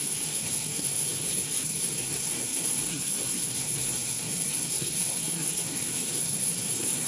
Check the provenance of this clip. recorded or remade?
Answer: remade